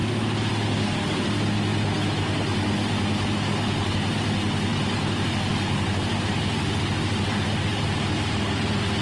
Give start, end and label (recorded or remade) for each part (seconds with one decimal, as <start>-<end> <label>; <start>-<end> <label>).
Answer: 0.0-4.7 recorded; 4.7-6.7 remade; 6.7-9.0 recorded